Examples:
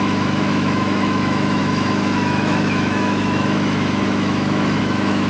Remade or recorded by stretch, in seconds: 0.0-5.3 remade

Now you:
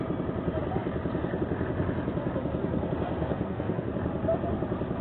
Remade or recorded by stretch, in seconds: 0.0-3.2 recorded; 3.2-3.9 remade; 3.9-5.0 recorded

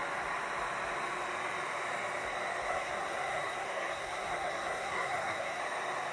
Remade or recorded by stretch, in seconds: 0.0-2.7 recorded; 2.7-5.6 remade; 5.6-6.1 recorded